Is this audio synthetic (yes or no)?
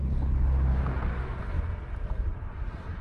no